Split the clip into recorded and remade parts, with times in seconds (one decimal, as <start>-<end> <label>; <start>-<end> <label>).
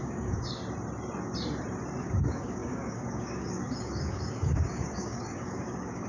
0.0-0.6 remade; 0.6-2.0 recorded; 2.0-6.1 remade